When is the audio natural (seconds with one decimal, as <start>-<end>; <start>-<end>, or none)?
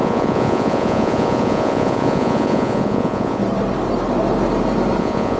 3.4-5.0